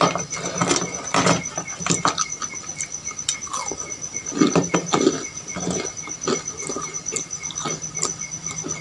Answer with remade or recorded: recorded